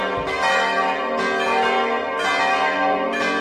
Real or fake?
real